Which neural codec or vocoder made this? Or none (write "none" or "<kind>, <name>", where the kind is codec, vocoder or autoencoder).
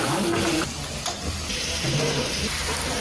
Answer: none